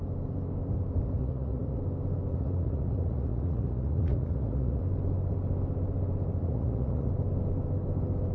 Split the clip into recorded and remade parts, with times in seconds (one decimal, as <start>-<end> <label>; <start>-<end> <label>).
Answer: 0.0-1.2 recorded; 1.2-1.8 remade; 1.8-2.3 recorded; 2.3-4.8 remade; 4.8-6.4 recorded; 6.4-7.1 remade; 7.1-8.3 recorded